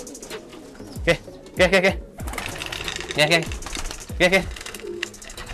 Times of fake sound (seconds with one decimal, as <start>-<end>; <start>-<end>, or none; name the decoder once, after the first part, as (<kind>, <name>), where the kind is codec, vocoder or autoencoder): 4.4-5.5 (codec, SNAC)